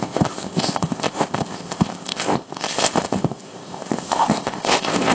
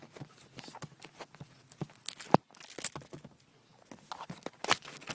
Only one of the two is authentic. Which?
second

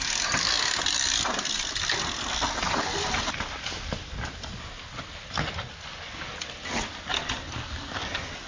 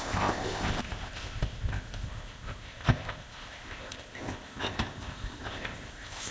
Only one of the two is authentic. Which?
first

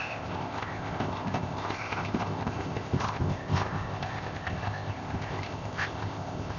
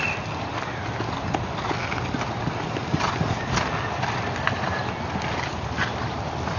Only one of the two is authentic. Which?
second